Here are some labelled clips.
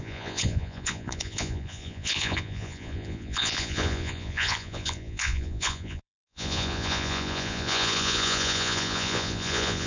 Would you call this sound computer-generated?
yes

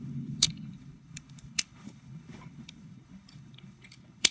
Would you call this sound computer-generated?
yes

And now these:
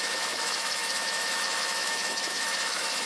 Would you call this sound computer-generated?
yes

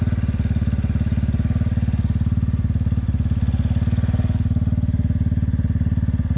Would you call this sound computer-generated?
no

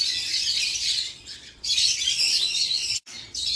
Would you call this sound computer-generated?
yes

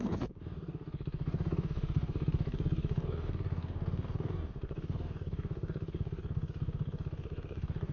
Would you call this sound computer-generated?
yes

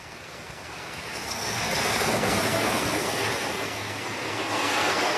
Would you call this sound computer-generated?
yes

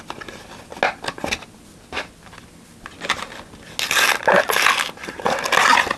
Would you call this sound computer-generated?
no